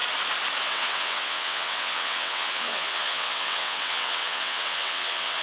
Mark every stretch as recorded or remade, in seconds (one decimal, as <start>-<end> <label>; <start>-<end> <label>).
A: 0.0-0.6 recorded; 0.6-5.4 remade